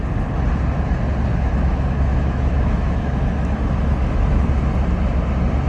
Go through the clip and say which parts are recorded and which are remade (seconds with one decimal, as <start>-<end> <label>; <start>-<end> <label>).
0.0-1.3 recorded; 1.3-4.5 remade; 4.5-5.7 recorded